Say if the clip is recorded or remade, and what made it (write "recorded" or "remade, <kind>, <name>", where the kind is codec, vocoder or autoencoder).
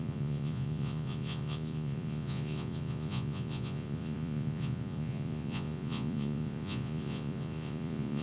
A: remade, vocoder, Vocos